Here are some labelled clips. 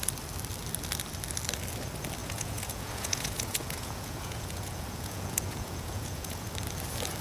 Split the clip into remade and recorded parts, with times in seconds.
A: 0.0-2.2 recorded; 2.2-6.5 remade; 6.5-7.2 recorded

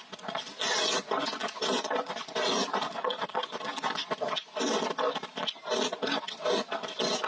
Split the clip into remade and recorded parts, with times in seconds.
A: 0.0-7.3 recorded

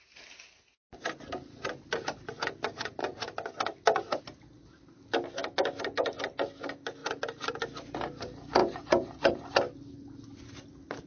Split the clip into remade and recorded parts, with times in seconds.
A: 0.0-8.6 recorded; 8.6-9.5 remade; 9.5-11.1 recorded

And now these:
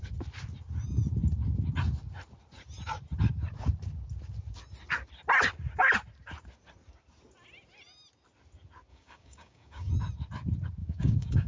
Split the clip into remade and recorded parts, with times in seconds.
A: 0.0-8.9 recorded; 8.9-9.9 remade; 9.9-10.8 recorded; 10.8-11.5 remade

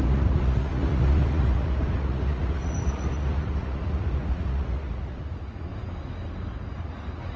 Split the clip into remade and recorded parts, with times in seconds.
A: 0.0-5.7 remade; 5.7-6.8 recorded; 6.8-7.4 remade

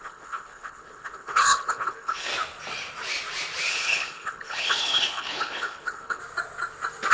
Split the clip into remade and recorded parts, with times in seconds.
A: 0.0-2.3 remade; 2.3-3.7 recorded; 3.7-6.2 remade; 6.2-7.1 recorded

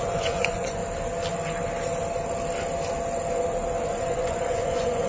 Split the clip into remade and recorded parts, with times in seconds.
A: 0.0-0.8 remade; 0.8-3.9 recorded; 3.9-5.1 remade